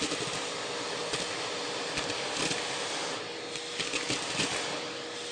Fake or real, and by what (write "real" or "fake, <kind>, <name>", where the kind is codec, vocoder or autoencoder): real